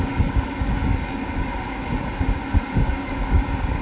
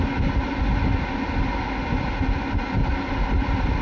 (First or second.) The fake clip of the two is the first